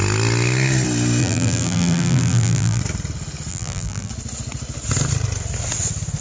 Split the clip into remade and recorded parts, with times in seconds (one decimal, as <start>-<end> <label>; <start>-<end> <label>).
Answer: 0.0-1.2 recorded; 1.2-2.8 remade; 2.8-3.5 recorded; 3.5-4.1 remade; 4.1-6.2 recorded